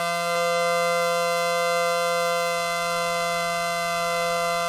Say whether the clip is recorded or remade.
recorded